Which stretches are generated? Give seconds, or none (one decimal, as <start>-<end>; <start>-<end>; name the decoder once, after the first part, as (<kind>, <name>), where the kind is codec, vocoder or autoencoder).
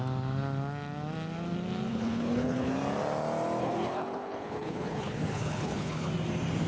1.9-2.7 (codec, HILCodec); 3.6-6.1